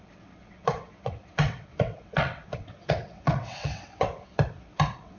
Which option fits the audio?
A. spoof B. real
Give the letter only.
A